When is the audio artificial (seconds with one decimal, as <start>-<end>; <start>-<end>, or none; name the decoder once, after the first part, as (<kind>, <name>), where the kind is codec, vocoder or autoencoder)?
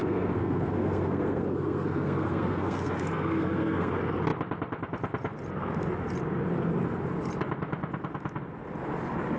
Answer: 0.0-3.9 (codec, SNAC)